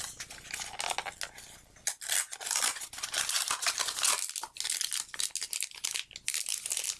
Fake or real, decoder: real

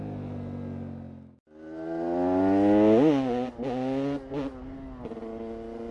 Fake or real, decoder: real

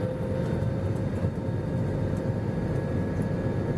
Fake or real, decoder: real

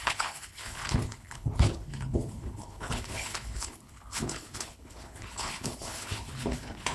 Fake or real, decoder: fake, codec, HILCodec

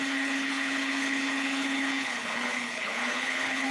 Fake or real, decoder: fake, codec, HILCodec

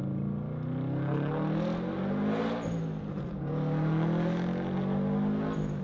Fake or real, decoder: real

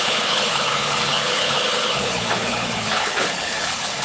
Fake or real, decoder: fake, codec, HILCodec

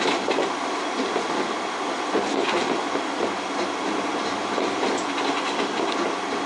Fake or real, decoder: real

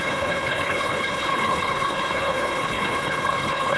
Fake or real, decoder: fake, codec, HILCodec